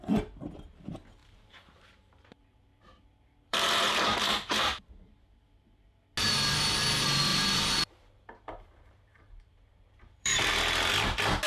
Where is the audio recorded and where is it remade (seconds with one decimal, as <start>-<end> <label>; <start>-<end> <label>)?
0.0-1.2 recorded; 1.2-4.8 remade; 4.8-7.3 recorded; 7.3-10.5 remade; 10.5-11.5 recorded